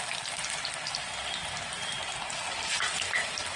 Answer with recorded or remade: recorded